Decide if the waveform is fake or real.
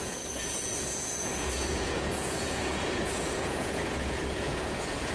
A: fake